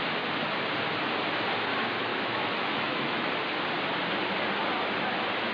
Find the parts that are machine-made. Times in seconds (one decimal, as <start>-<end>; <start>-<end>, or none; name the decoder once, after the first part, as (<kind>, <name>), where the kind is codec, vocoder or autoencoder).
2.1-3.3 (autoencoder, DAC-VAE)

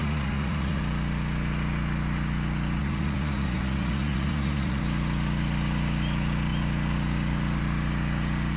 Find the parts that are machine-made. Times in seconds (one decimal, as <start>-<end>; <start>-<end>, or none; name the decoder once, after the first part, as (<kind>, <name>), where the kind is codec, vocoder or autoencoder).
0.0-0.8 (vocoder, Vocos); 2.8-4.8